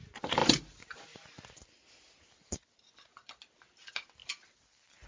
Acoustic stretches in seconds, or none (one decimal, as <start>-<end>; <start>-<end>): 0.0-5.1

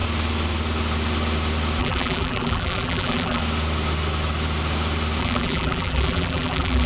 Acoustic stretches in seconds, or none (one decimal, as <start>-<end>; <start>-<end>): 0.0-1.8; 3.4-5.2

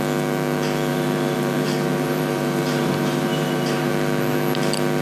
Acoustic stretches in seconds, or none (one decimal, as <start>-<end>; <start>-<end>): 0.0-0.9; 3.9-5.0

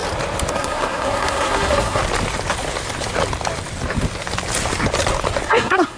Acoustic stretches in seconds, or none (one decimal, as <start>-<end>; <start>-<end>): 0.0-0.5; 2.0-5.5

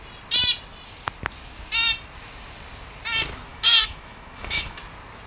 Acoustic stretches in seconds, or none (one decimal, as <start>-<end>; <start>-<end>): 0.0-3.5; 4.8-5.3